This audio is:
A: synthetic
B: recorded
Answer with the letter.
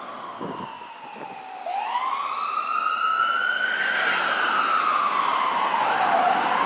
B